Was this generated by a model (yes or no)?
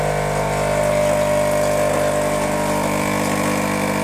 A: no